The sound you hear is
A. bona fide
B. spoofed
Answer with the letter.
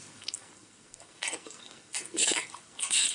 B